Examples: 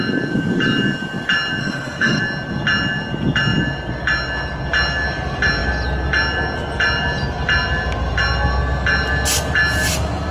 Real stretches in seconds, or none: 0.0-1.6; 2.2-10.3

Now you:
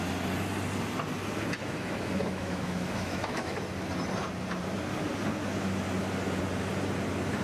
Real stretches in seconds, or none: 0.0-1.6; 3.6-7.4

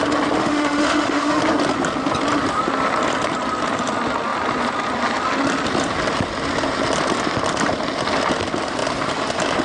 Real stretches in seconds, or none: 0.0-0.4; 1.4-9.6

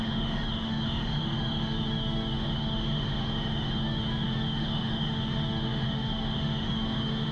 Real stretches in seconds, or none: none

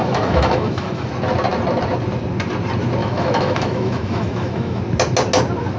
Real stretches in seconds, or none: 1.1-3.0; 4.8-5.8

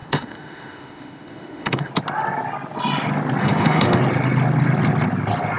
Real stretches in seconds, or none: 1.9-3.4; 4.0-5.6

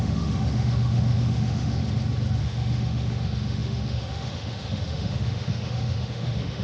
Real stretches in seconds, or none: 1.8-2.4

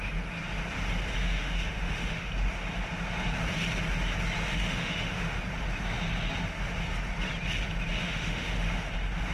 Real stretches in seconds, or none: 0.0-1.2; 2.3-4.5; 5.4-7.9; 8.7-9.3